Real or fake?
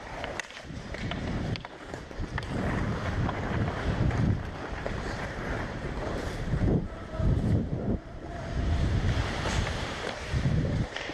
fake